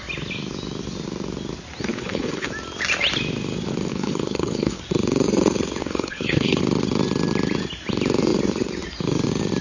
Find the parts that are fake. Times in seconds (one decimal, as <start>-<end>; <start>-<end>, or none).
1.9-2.5; 3.9-4.8; 5.8-6.6